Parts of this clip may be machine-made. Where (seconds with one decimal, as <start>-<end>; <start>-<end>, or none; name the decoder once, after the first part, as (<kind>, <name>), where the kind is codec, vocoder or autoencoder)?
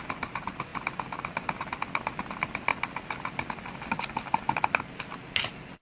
none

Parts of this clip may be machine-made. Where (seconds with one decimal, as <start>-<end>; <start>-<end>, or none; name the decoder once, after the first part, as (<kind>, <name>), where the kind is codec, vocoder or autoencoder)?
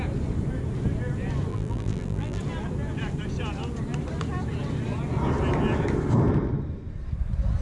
1.5-2.4 (vocoder, BigVGAN v2)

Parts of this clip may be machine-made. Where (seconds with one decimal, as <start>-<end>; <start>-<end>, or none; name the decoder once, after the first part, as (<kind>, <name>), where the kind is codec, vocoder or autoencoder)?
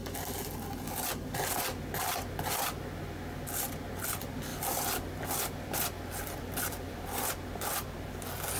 4.5-7.3 (vocoder, BigVGAN v2)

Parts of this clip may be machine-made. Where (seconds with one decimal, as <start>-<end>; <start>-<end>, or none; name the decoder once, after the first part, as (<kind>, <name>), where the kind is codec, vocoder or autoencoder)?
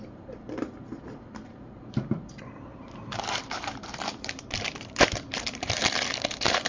0.0-6.7 (vocoder, BigVGAN v2)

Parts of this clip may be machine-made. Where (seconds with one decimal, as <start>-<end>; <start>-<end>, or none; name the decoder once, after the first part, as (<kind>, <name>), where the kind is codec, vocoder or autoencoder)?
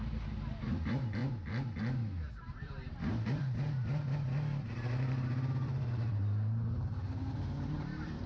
0.0-1.2 (vocoder, BigVGAN v2); 2.4-8.3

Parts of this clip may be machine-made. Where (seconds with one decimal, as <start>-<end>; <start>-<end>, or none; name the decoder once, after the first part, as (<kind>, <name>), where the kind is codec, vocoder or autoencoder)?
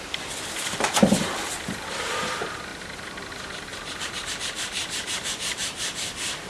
3.7-5.8 (vocoder, BigVGAN v2)